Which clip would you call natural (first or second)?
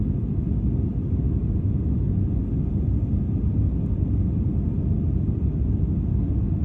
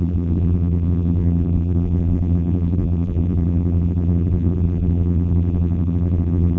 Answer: first